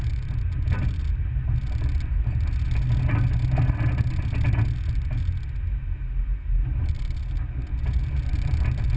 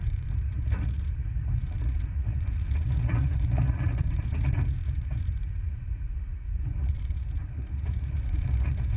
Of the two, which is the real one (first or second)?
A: first